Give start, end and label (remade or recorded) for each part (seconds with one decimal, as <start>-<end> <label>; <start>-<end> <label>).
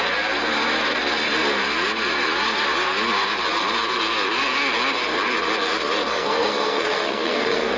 0.0-6.1 recorded; 6.1-7.8 remade